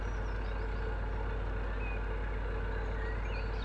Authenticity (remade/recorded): recorded